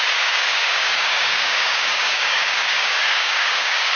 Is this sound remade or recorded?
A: remade